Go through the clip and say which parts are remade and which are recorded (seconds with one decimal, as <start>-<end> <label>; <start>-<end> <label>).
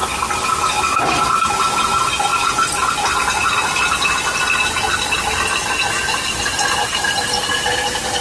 0.0-8.2 recorded